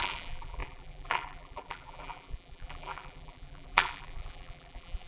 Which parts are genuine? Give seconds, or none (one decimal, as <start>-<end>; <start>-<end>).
none